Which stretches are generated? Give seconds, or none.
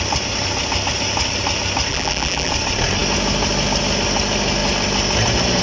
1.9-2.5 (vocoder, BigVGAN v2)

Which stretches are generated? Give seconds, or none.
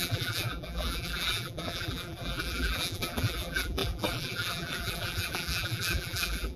0.0-6.6 (vocoder, BigVGAN v2)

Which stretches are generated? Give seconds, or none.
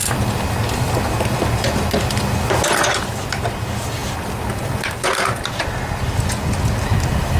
none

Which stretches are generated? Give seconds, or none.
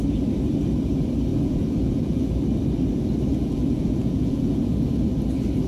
1.3-2.3 (vocoder, Vocos); 3.3-4.9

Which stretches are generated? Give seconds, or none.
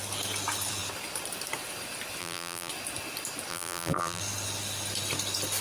2.2-2.7 (vocoder, BigVGAN v2); 3.5-4.2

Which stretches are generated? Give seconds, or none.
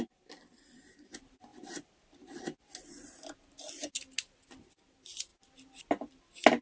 none